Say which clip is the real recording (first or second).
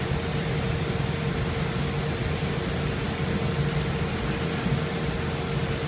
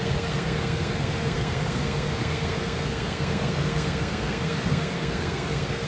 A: first